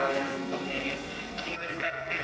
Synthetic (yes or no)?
yes